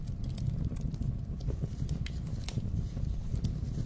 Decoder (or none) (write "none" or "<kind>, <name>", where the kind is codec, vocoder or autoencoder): none